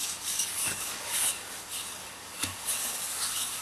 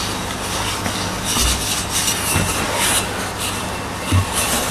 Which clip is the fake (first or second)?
first